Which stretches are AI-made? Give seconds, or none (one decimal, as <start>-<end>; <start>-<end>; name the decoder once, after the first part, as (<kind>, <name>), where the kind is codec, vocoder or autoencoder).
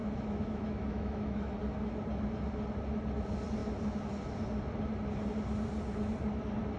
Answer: 0.0-1.5 (autoencoder, DAC-VAE)